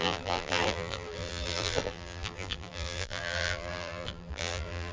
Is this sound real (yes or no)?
no